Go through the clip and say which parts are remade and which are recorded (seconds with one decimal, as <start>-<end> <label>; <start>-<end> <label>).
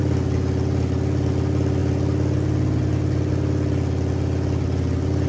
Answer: 0.0-5.3 recorded